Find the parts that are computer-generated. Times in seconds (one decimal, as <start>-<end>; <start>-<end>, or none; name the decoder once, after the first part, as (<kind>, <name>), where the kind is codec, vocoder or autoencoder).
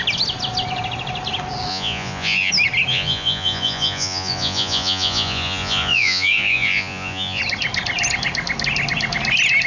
1.7-2.5 (vocoder, Vocos); 2.9-7.4